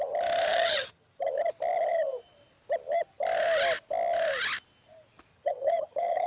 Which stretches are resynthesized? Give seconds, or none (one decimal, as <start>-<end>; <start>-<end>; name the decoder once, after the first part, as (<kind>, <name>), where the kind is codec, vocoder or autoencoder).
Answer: 0.5-1.3 (vocoder, HiFi-GAN); 5.3-6.3